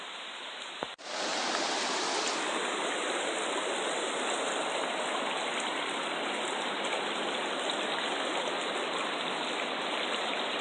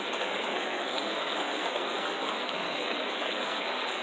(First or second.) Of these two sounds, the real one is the first